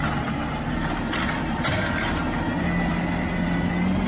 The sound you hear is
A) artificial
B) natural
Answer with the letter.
B